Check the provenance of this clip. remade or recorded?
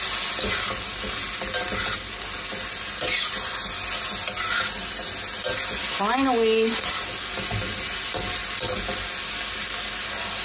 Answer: recorded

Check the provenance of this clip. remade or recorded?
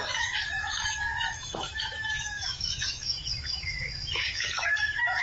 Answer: remade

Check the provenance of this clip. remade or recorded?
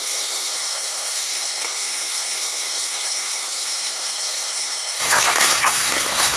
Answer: remade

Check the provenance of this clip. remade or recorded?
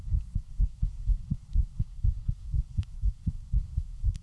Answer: remade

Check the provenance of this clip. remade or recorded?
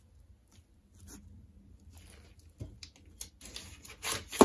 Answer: recorded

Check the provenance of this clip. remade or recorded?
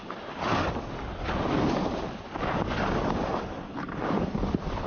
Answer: recorded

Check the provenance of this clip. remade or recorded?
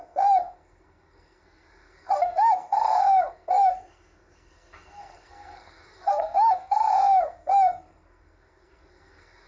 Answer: remade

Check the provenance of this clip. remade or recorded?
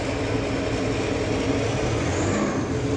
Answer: recorded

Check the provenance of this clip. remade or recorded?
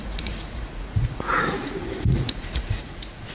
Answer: remade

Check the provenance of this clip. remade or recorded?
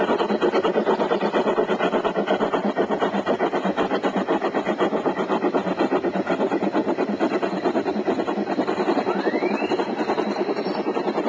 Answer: recorded